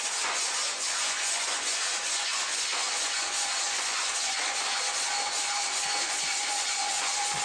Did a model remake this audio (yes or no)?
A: yes